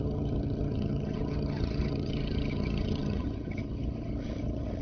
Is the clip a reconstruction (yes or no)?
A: yes